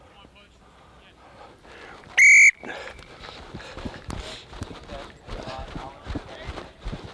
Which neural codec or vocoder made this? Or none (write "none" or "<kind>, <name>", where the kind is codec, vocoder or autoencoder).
none